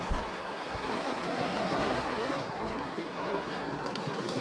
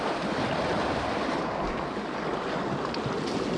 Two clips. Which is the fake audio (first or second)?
first